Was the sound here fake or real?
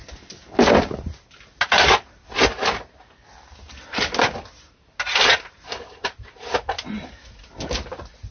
real